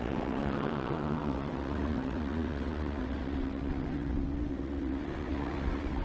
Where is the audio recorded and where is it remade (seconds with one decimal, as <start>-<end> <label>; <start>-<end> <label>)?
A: 0.0-6.0 remade